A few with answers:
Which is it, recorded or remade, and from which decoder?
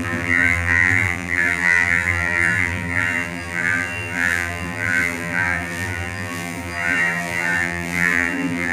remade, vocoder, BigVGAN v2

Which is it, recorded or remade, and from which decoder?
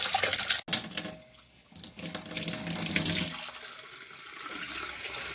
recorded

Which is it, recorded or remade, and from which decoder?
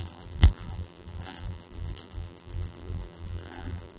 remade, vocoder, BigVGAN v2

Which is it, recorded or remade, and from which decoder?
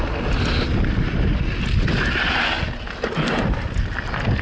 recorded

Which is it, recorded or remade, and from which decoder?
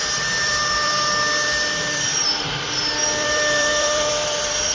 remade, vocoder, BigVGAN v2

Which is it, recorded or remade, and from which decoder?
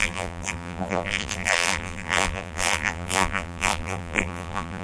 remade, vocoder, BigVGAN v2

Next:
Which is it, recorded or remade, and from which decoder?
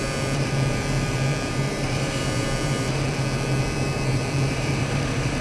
remade, vocoder, BigVGAN v2